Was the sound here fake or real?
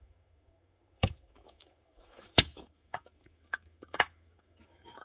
fake